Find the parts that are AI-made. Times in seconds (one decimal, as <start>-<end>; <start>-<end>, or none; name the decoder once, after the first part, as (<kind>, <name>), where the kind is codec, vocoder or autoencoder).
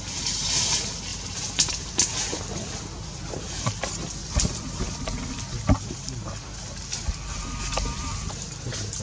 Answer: 1.1-1.9 (vocoder, BigVGAN v2)